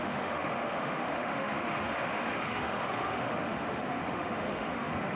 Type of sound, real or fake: fake